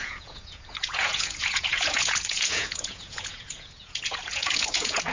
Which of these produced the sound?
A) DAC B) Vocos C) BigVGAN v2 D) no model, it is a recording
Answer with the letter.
B